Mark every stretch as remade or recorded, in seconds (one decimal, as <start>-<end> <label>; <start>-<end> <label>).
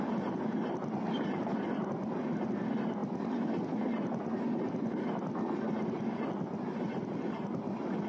0.0-8.1 recorded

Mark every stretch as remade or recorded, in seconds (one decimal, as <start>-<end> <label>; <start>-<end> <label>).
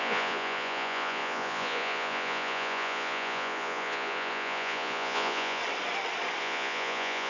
0.0-5.6 remade; 5.6-6.4 recorded; 6.4-7.3 remade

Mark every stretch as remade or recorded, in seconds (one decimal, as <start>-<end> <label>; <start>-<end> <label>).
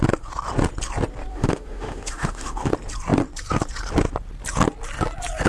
0.0-1.3 recorded; 1.3-2.7 remade; 2.7-5.5 recorded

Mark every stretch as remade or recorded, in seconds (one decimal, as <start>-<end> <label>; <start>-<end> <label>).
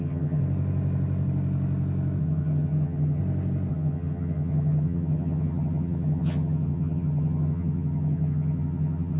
0.0-0.4 remade; 0.4-2.2 recorded; 2.2-3.2 remade; 3.2-3.7 recorded; 3.7-9.2 remade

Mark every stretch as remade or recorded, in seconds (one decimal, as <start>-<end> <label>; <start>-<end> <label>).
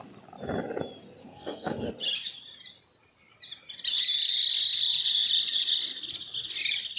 0.0-1.2 recorded; 1.2-1.9 remade; 1.9-7.0 recorded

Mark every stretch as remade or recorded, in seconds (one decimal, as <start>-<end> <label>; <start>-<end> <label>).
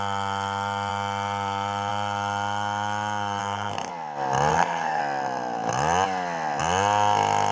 0.0-3.4 recorded; 3.4-3.9 remade; 3.9-4.5 recorded; 4.5-5.0 remade; 5.0-7.5 recorded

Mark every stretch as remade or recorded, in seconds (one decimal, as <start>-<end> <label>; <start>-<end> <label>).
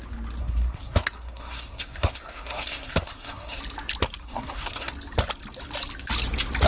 0.0-0.4 recorded; 0.4-3.6 remade; 3.6-4.2 recorded; 4.2-4.9 remade; 4.9-6.7 recorded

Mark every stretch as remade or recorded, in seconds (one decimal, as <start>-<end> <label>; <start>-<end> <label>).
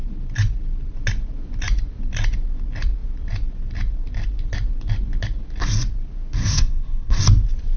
0.0-6.4 recorded; 6.4-7.2 remade; 7.2-7.8 recorded